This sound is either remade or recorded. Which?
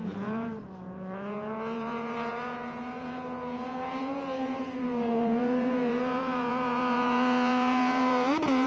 remade